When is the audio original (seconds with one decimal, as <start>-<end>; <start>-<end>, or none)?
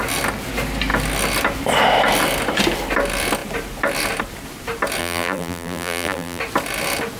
0.0-5.0; 6.4-7.2